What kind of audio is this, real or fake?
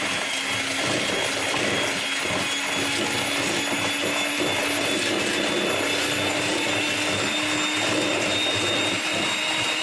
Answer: real